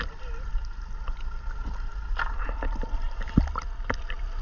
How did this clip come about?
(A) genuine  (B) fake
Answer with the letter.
A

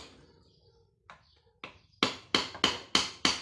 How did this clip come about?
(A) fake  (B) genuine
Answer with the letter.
B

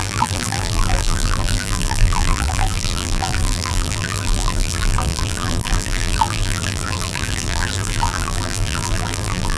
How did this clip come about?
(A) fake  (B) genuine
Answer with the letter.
A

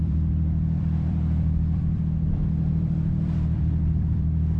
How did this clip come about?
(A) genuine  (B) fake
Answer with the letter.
B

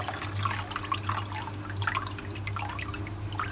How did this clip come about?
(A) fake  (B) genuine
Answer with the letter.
B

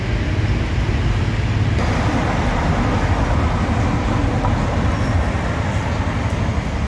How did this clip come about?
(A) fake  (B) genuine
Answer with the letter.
B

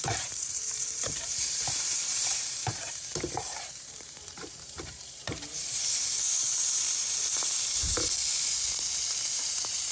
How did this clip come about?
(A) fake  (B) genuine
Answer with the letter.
A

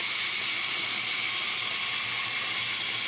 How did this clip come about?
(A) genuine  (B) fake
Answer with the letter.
A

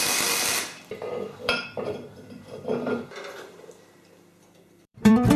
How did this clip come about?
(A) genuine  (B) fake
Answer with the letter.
B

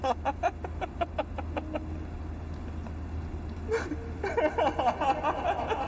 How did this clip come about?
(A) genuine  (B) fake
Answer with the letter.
A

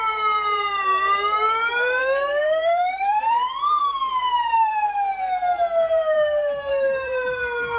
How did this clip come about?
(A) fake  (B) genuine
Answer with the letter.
A